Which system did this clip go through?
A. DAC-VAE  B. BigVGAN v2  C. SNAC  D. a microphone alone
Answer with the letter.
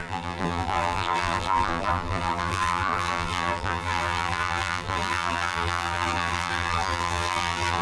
B